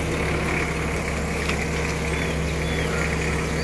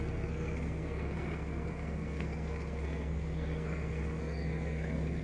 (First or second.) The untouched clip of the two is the first